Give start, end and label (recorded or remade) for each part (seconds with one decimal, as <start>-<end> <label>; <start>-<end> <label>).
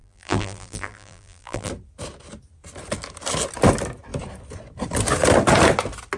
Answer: 0.0-1.7 remade; 1.7-6.2 recorded